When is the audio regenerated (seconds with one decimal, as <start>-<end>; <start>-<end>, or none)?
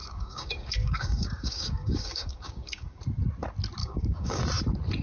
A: 0.0-3.0; 3.8-4.4